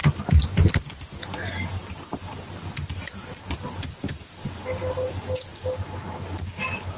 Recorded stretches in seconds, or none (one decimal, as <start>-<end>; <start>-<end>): 0.0-1.7